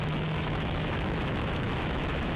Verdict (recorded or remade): remade